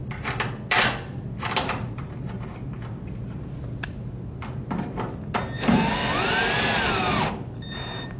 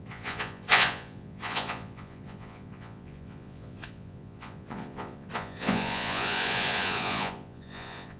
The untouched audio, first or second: first